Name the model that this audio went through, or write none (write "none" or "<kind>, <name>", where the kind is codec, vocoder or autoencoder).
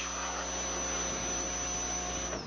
none